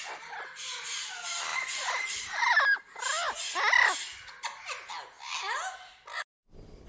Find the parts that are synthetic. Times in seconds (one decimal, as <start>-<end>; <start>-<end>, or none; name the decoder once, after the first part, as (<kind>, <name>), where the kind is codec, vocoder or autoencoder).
1.5-2.8 (vocoder, BigVGAN v2)